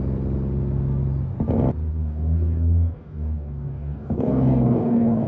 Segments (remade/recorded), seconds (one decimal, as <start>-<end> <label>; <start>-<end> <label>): 0.0-1.9 recorded; 1.9-5.3 remade